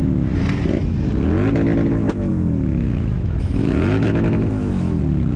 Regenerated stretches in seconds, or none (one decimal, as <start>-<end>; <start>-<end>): 2.3-5.0